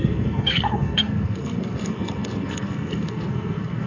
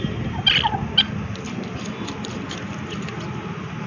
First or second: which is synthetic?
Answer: first